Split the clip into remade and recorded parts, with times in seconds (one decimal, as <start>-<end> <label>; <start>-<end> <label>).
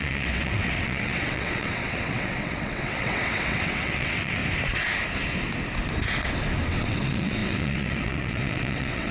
0.0-4.4 remade; 4.4-6.7 recorded; 6.7-9.1 remade